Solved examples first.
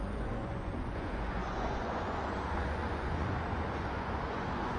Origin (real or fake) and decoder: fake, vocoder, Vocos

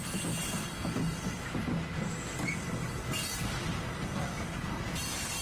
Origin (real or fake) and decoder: real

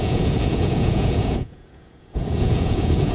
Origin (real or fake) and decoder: fake, vocoder, Vocos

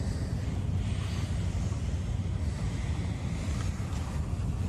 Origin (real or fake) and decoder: real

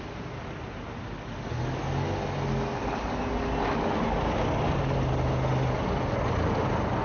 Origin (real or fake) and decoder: real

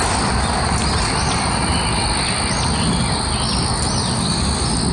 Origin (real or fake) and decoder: real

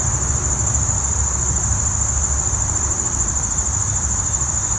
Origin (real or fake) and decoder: real